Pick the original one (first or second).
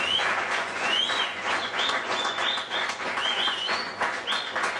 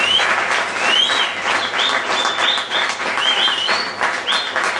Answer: second